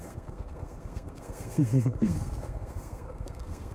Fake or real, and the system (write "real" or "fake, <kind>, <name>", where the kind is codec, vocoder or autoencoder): fake, codec, SNAC